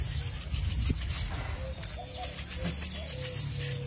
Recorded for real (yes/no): yes